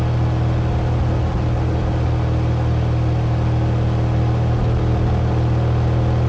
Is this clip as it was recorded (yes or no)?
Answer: yes